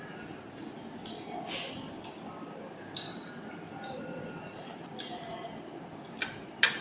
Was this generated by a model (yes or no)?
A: no